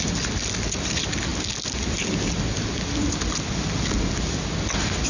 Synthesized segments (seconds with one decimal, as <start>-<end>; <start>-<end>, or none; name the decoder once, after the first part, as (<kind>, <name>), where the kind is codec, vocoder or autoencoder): none